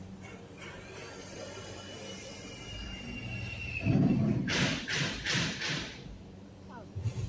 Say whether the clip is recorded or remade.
remade